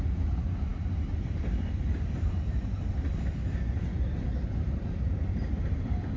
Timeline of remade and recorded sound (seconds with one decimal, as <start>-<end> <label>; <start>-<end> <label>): 0.0-6.2 recorded